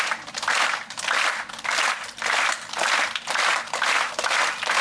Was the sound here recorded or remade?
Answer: recorded